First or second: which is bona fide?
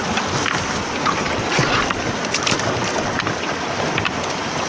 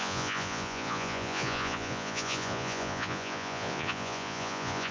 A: first